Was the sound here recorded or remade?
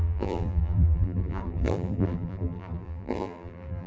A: remade